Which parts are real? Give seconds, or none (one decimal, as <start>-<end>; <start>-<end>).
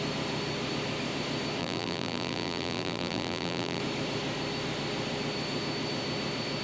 0.0-1.6; 3.8-6.6